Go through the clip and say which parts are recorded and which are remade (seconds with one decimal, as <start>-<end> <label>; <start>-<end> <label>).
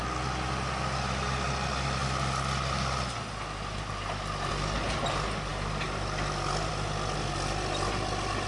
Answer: 0.0-8.5 recorded